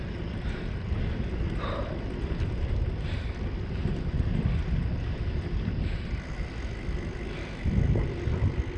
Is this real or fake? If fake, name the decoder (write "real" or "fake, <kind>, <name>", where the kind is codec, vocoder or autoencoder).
real